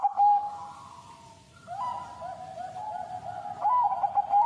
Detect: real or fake real